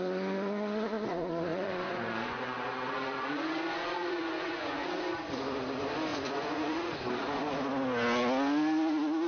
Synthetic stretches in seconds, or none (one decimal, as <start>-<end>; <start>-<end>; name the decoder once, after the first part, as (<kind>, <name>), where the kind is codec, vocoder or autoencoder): 1.5-5.0 (vocoder, Vocos); 6.1-7.0